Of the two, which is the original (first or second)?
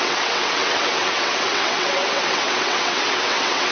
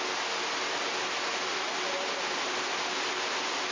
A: second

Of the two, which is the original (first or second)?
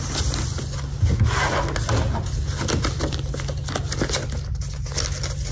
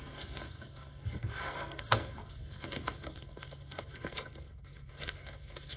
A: first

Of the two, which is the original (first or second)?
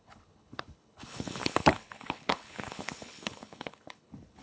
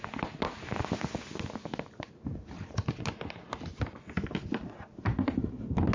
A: second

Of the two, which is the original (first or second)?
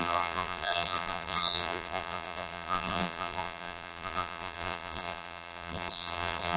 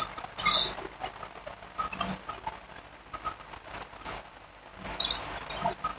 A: second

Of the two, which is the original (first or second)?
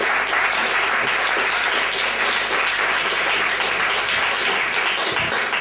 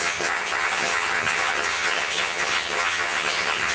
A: first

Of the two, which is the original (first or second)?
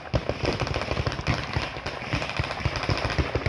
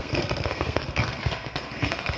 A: first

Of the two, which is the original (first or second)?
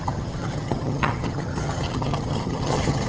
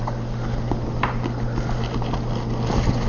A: second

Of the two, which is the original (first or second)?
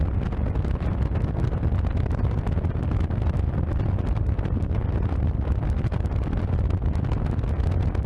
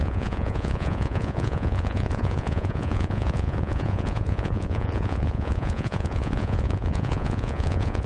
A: first